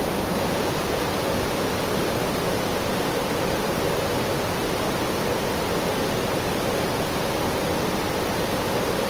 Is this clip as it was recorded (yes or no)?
yes